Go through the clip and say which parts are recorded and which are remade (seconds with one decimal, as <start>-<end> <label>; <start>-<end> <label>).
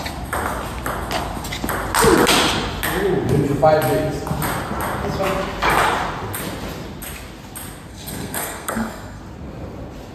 0.0-7.9 recorded; 7.9-9.2 remade; 9.2-10.1 recorded